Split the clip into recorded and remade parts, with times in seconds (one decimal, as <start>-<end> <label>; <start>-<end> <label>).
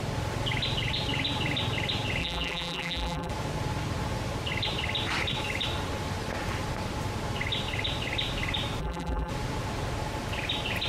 0.0-2.2 recorded; 2.2-3.3 remade; 3.3-8.8 recorded; 8.8-9.3 remade; 9.3-10.9 recorded